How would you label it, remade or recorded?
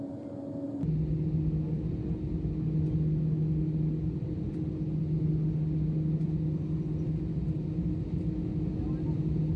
recorded